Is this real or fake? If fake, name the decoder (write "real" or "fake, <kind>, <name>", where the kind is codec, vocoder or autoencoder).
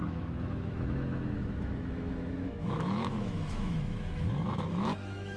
fake, autoencoder, DAC-VAE